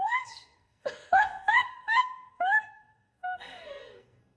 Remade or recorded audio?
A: remade